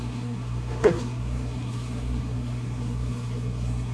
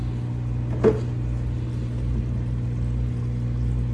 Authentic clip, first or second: second